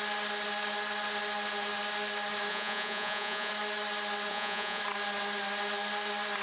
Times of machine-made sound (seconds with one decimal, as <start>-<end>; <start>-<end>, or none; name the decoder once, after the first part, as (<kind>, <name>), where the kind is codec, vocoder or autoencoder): 2.5-3.5 (vocoder, Vocos); 4.3-4.8